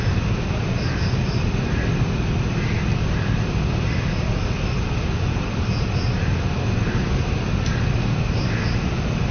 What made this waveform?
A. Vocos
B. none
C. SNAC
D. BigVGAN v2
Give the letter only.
B